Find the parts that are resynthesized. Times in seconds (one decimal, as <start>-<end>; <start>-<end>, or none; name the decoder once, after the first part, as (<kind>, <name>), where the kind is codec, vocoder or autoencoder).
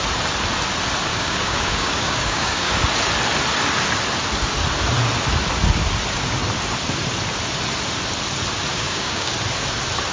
1.1-2.7 (codec, DAC); 8.7-9.3